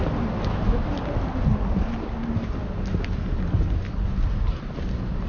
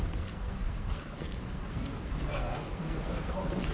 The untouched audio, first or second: first